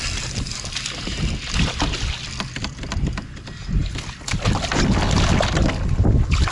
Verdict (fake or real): real